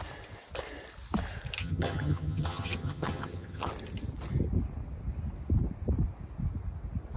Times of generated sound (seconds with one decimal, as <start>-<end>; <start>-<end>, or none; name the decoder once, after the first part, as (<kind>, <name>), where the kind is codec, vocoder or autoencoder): 1.6-3.7 (vocoder, HiFi-GAN)